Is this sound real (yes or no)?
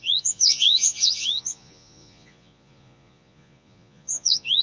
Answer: no